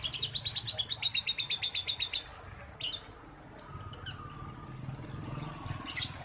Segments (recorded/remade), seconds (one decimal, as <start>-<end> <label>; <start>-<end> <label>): 0.0-6.2 recorded